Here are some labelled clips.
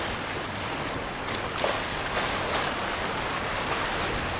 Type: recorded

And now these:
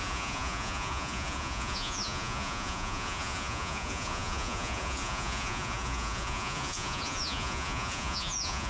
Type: remade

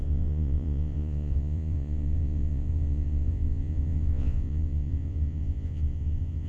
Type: remade